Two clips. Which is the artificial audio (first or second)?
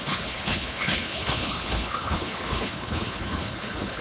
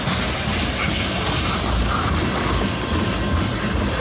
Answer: first